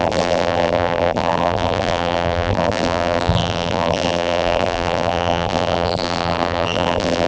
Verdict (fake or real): fake